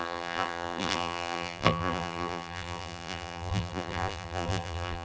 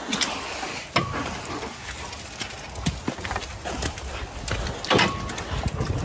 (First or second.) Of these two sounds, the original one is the second